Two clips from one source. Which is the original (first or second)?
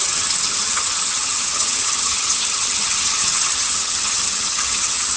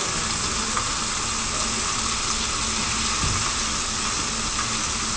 second